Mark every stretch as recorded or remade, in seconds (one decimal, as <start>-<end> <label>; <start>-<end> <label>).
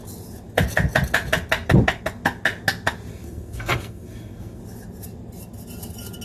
0.0-3.1 recorded; 3.1-4.6 remade; 4.6-6.2 recorded